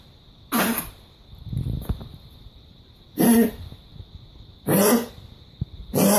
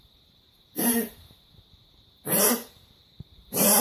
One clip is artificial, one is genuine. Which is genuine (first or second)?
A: first